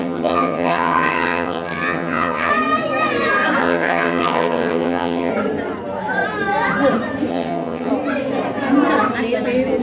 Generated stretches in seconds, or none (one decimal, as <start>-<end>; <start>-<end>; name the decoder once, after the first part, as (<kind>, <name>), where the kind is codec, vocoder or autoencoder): 0.0-2.5 (vocoder, HiFi-GAN); 3.6-5.3; 7.3-7.9

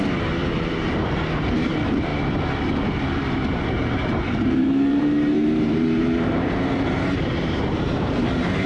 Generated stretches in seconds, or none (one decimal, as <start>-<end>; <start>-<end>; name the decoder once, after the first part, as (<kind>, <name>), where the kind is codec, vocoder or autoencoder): 0.0-2.1 (vocoder, BigVGAN v2); 3.5-8.7

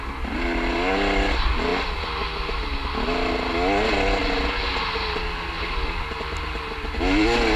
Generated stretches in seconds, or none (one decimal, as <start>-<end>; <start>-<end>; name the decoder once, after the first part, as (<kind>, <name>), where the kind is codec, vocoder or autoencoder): none

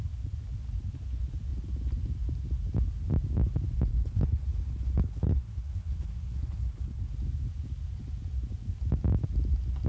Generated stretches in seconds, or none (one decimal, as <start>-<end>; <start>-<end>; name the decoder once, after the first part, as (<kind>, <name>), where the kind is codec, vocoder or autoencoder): 3.9-7.1 (codec, HILCodec)

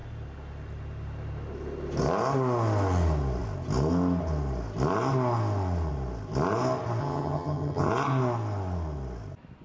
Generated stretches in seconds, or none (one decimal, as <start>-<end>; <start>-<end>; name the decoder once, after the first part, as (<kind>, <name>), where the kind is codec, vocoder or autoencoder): 7.0-7.9 (vocoder, HiFi-GAN)

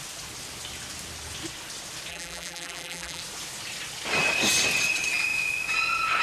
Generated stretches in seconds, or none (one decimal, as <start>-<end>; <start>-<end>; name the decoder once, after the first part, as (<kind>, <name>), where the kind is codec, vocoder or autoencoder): 2.1-3.2 (vocoder, BigVGAN v2)